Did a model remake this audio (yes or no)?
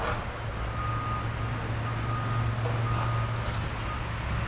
no